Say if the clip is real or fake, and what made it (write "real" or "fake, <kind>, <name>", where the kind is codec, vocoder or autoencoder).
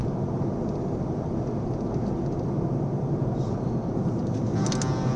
real